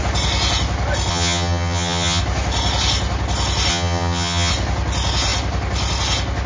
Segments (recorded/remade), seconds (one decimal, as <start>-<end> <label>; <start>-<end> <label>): 0.0-1.1 recorded; 1.1-2.2 remade; 2.2-3.7 recorded; 3.7-4.5 remade; 4.5-6.5 recorded

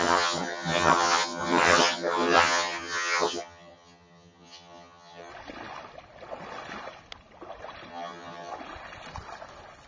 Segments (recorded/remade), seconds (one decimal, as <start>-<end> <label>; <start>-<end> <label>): 0.0-5.3 remade; 5.3-7.9 recorded; 7.9-8.5 remade; 8.5-9.9 recorded

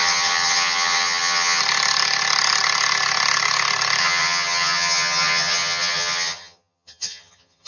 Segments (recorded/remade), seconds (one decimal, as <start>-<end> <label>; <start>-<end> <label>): 0.0-1.6 remade; 1.6-4.0 recorded; 4.0-7.7 remade